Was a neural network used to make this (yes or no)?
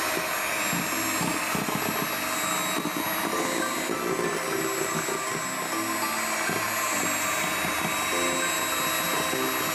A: no